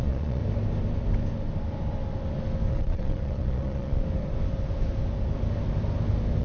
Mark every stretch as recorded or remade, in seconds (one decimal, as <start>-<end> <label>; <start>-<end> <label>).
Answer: 0.0-0.4 remade; 0.4-2.7 recorded; 2.7-4.0 remade; 4.0-6.4 recorded